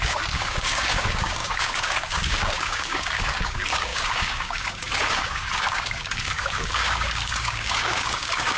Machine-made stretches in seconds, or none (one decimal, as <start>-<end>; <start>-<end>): 0.0-8.6